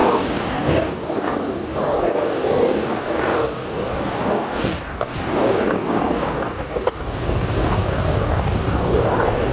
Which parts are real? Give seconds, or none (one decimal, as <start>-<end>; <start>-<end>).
none